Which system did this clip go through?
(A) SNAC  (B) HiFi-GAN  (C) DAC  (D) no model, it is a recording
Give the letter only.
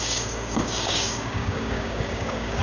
C